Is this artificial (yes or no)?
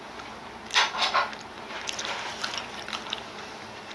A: no